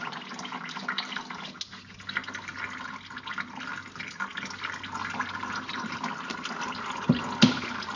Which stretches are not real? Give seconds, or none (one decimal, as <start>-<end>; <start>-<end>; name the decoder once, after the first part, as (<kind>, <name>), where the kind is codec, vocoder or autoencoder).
0.0-1.2 (vocoder, BigVGAN v2)